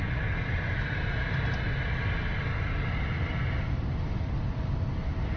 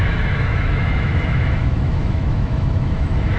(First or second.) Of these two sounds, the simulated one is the second